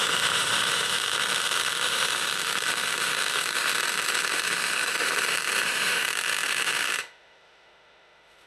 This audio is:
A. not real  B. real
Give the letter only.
A